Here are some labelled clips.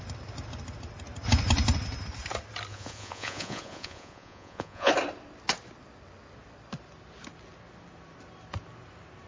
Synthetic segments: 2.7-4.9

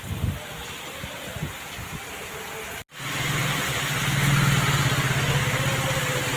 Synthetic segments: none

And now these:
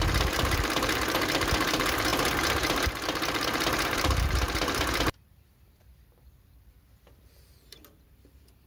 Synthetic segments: 0.0-8.7

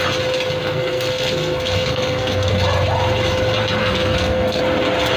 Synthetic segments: 0.6-2.5; 3.8-4.6

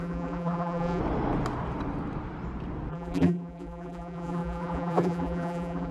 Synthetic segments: 0.0-1.0; 2.9-5.9